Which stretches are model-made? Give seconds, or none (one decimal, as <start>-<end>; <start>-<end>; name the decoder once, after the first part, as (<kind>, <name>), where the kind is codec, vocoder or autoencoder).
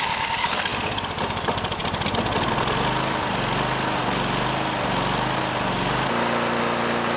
none